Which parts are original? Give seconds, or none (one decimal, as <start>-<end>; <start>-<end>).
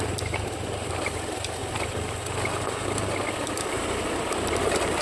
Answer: 1.6-4.6